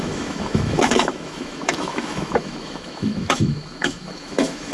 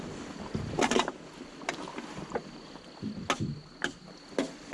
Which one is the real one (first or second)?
second